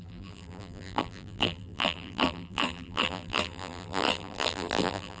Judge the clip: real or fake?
fake